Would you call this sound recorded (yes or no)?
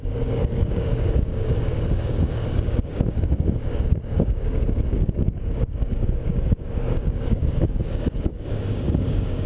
no